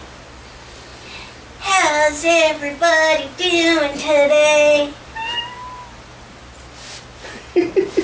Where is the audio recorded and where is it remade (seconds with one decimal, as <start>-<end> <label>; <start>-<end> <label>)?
0.0-8.0 recorded